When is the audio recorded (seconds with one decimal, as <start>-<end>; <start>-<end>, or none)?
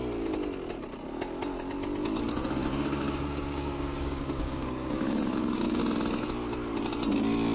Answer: 0.0-2.6; 5.8-7.5